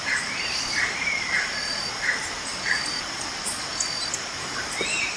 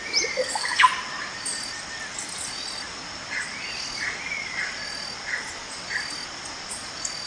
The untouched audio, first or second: second